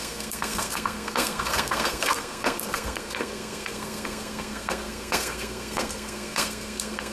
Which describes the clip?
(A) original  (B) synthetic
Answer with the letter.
B